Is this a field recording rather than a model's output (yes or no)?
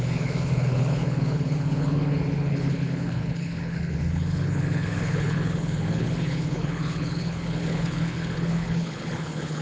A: no